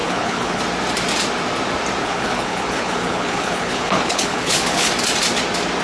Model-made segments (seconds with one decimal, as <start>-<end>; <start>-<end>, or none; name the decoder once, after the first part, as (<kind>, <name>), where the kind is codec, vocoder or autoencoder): 0.0-0.6 (codec, HILCodec); 2.0-4.9